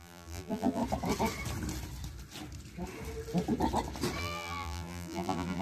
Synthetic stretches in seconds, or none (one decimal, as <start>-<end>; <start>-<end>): 0.0-0.8; 4.2-5.6